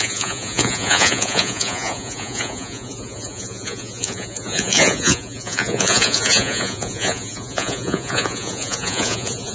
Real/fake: fake